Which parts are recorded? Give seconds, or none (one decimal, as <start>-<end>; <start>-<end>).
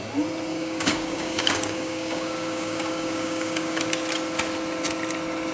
0.0-0.5; 3.8-5.5